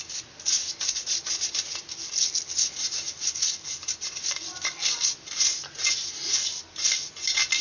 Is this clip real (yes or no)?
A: yes